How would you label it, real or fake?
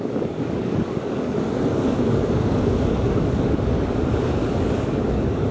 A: fake